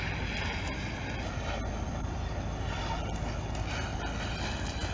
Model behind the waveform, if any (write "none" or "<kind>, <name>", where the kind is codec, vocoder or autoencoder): none